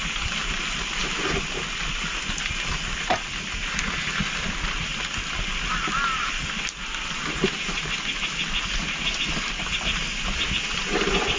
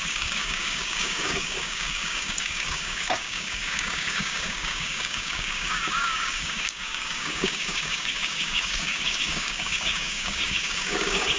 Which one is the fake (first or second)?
second